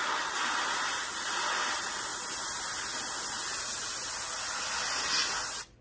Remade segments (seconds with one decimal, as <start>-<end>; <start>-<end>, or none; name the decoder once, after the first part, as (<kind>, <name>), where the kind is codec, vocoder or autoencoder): none